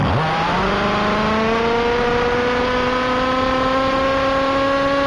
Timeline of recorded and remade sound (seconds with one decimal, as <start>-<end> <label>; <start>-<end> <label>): 0.0-0.6 remade; 0.6-5.1 recorded